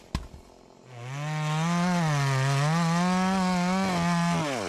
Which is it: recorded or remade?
recorded